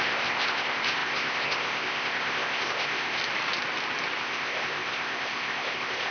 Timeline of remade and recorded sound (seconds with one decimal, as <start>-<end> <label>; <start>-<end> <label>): 0.0-3.2 remade; 3.2-4.2 recorded; 4.2-6.1 remade